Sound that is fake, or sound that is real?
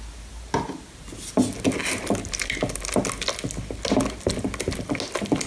real